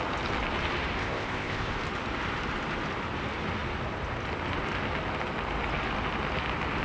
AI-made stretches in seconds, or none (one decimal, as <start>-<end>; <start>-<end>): 1.0-1.7